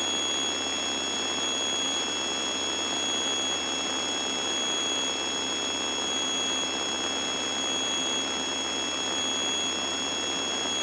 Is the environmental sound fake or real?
real